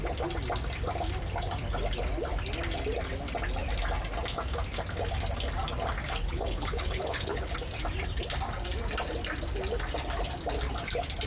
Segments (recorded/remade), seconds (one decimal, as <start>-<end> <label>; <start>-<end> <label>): 0.0-6.2 recorded; 6.2-7.5 remade; 7.5-11.3 recorded